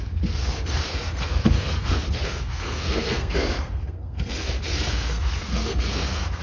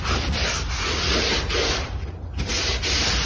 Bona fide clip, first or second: second